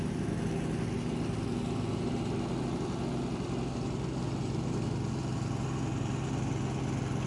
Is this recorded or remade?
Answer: recorded